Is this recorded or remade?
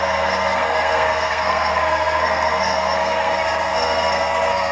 remade